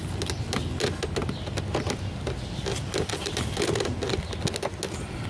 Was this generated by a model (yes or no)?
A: no